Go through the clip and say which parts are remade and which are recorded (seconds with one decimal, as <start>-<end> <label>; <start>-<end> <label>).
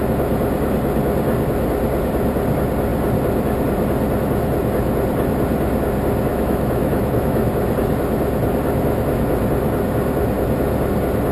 0.0-6.3 recorded; 6.3-7.5 remade; 7.5-11.3 recorded